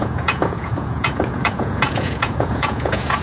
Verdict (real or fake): fake